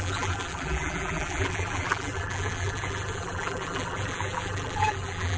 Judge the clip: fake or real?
fake